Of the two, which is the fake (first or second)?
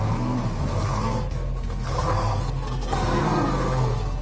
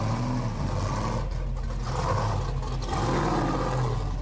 first